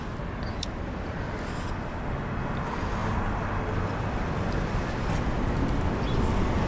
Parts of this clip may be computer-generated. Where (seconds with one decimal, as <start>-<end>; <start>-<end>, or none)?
none